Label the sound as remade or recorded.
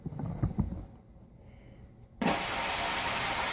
recorded